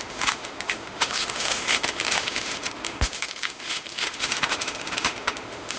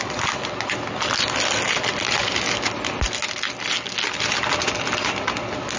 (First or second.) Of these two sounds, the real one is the second